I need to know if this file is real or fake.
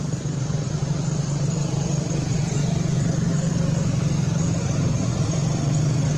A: real